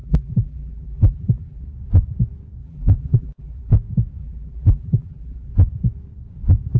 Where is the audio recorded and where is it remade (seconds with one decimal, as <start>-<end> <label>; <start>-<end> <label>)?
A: 0.0-1.6 remade; 1.6-2.6 recorded; 2.6-3.7 remade; 3.7-4.2 recorded; 4.2-5.5 remade; 5.5-6.8 recorded